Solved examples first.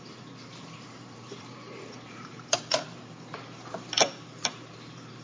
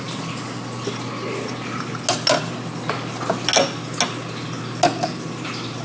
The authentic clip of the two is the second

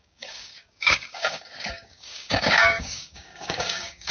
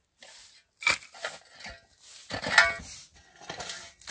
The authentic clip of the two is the second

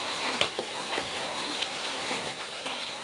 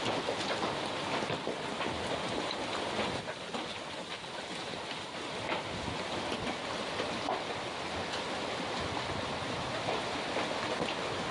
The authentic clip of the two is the second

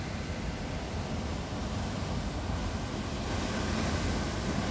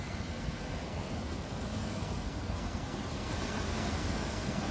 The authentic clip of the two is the first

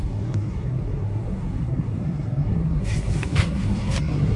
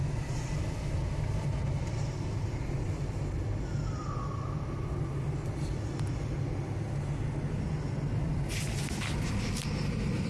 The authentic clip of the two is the second